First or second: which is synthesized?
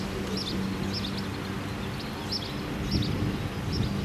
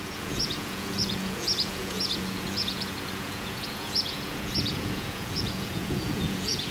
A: second